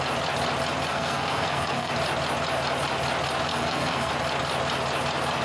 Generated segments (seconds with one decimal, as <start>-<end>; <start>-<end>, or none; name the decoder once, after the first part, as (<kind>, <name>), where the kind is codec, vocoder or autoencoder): 0.9-1.9 (codec, SNAC); 3.5-4.1